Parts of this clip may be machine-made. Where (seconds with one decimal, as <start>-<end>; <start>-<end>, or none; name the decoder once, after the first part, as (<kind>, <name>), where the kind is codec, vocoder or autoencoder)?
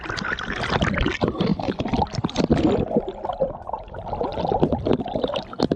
none